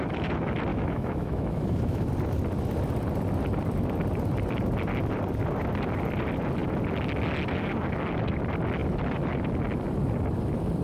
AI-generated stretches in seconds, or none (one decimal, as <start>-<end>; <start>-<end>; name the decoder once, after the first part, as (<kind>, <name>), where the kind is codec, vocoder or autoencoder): 0.7-2.1 (autoencoder, DAC-VAE)